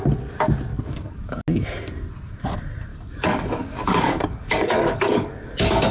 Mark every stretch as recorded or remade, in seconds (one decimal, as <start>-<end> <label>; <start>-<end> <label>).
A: 0.0-0.7 recorded; 0.7-1.4 remade; 1.4-2.9 recorded; 2.9-5.9 remade